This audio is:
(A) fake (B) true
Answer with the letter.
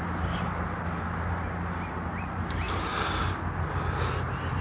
B